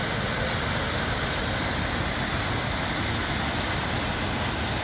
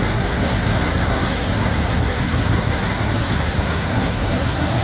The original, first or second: first